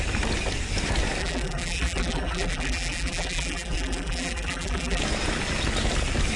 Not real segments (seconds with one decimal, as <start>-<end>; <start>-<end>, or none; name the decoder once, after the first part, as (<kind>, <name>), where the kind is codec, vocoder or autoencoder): 1.2-5.0 (vocoder, BigVGAN v2)